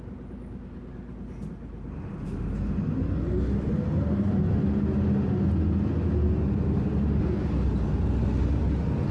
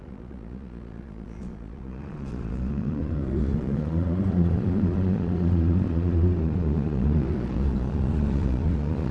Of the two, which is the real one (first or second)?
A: first